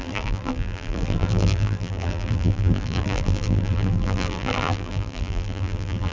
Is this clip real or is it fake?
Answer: fake